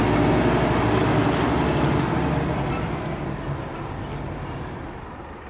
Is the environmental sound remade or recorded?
recorded